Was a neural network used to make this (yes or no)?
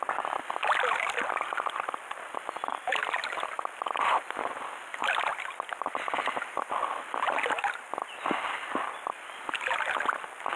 no